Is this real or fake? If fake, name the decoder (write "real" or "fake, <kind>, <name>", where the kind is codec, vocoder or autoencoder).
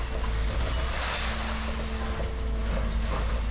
real